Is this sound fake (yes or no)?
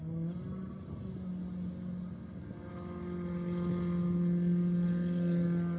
no